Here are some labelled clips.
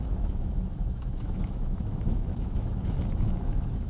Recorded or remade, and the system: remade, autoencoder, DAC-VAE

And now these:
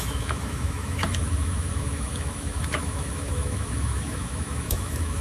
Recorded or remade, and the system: remade, autoencoder, DAC-VAE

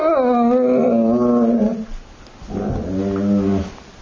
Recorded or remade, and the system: recorded